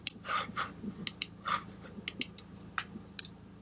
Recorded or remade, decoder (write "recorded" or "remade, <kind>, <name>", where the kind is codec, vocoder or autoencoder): recorded